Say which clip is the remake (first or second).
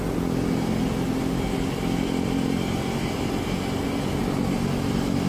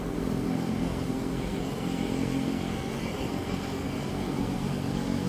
second